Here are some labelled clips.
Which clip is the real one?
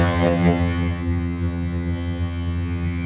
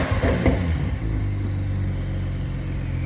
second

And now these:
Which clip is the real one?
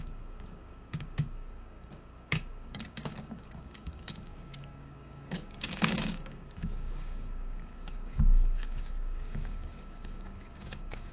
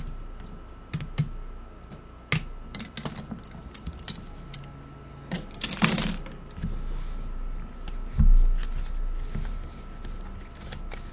second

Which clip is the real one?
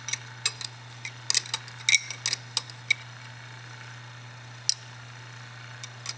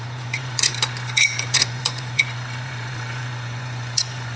first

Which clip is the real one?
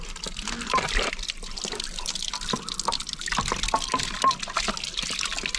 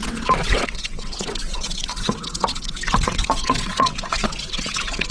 first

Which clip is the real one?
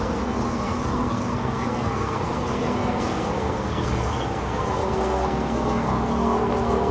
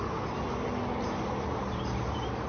second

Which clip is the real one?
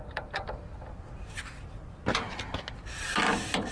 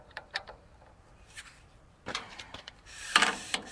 first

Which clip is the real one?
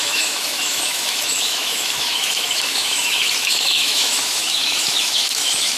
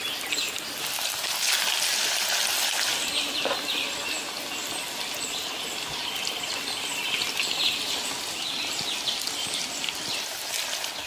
second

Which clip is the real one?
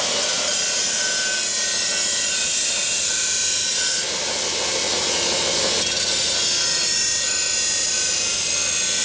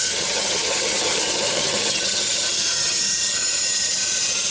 first